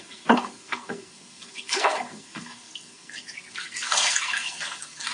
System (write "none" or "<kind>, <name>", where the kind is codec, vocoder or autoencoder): codec, SNAC